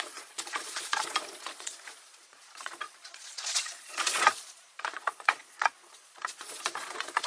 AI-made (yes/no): yes